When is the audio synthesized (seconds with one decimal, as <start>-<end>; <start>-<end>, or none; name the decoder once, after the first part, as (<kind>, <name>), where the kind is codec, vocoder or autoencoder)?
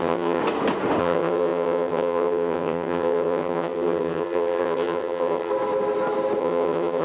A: 0.0-0.4 (vocoder, HiFi-GAN); 1.0-5.5; 6.4-7.0